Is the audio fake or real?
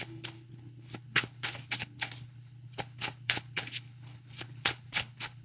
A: fake